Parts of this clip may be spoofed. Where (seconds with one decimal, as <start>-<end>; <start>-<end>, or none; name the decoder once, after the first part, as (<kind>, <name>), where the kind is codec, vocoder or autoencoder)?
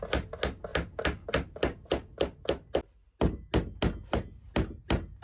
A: none